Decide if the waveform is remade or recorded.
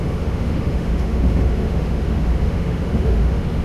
remade